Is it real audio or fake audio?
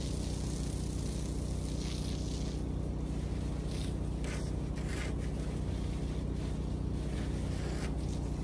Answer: real